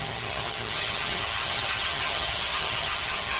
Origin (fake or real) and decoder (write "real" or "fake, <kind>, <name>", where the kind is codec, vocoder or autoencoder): fake, vocoder, HiFi-GAN